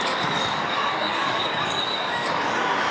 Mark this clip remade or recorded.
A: remade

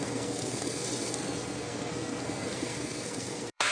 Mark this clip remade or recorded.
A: remade